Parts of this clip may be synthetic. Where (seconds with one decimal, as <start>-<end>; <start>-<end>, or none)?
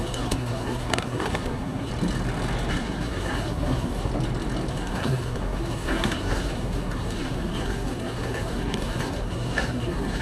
0.0-1.9; 2.7-4.1; 4.7-10.2